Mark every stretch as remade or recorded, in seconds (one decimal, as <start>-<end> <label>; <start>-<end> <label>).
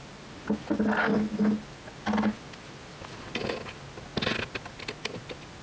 0.0-5.6 recorded